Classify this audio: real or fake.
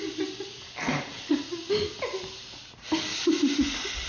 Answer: real